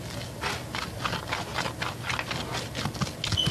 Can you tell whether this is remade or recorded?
recorded